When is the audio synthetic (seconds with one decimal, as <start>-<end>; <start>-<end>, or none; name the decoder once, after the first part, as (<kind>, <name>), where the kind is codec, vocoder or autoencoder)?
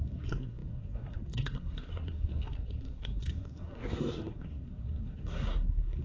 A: 0.0-6.0 (codec, SNAC)